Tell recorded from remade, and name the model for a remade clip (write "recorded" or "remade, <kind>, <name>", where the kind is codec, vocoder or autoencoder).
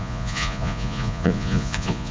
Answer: remade, vocoder, Vocos